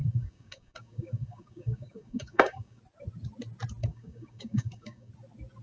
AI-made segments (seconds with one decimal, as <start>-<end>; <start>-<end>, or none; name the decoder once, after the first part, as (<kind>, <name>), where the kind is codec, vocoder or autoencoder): 0.0-2.8 (codec, DAC); 3.8-5.1